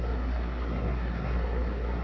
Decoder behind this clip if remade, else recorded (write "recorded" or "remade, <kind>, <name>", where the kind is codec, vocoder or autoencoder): remade, codec, SNAC